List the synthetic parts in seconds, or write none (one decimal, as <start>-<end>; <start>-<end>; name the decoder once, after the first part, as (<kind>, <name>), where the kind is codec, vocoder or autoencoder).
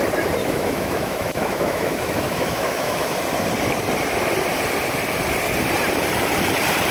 0.4-3.2 (autoencoder, DAC-VAE)